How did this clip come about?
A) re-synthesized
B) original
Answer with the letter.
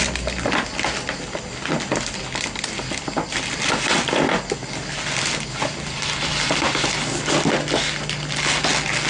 B